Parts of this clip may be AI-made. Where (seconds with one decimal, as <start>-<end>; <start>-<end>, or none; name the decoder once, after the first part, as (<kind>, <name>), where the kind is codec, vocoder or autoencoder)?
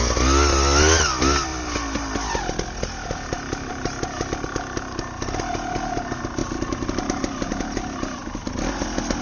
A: none